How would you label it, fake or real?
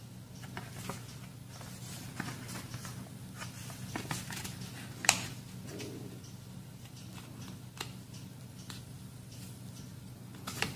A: real